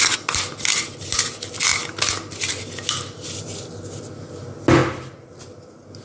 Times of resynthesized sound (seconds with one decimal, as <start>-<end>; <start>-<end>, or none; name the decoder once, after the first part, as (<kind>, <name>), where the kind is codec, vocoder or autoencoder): none

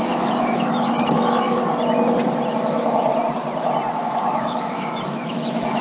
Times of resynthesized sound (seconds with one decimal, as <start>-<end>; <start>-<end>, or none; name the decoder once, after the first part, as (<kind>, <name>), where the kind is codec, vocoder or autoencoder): 0.0-1.6 (autoencoder, DAC-VAE); 2.5-3.1; 4.0-5.8

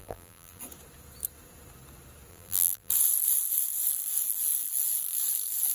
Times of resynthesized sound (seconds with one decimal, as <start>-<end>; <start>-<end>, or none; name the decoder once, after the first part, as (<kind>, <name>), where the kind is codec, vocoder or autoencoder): 0.0-0.6 (vocoder, BigVGAN v2); 2.3-2.9

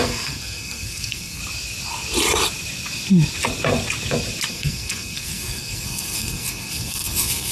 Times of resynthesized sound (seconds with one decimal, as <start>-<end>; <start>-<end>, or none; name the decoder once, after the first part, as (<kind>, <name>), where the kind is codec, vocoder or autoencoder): 0.0-1.4 (codec, SNAC); 4.5-7.5

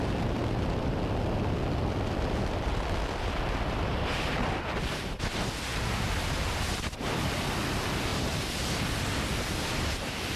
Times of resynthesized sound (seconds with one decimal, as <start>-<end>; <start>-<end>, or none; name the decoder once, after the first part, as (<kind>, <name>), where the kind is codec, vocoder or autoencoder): 8.1-8.6 (vocoder, BigVGAN v2)

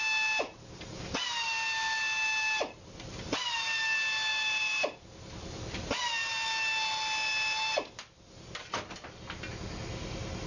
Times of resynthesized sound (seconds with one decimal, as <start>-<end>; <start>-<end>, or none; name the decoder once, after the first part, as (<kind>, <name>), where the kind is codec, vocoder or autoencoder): 4.3-5.9 (vocoder, BigVGAN v2)

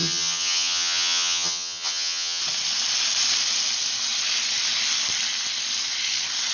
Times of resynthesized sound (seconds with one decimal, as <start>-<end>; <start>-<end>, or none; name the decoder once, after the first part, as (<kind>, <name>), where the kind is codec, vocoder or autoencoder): 0.0-2.4 (vocoder, HiFi-GAN)

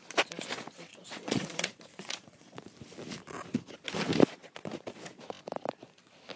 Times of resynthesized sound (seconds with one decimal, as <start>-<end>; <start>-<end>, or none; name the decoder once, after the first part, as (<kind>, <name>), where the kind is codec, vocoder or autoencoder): 0.9-2.6 (vocoder, Vocos)